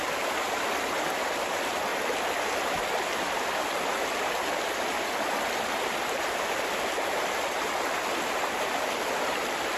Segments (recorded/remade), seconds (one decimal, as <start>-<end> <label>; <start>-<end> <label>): 0.0-9.8 recorded